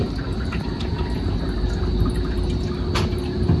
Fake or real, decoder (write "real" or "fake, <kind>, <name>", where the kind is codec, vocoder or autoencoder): real